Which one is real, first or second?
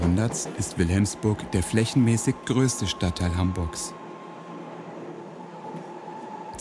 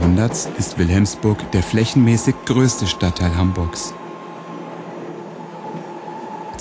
second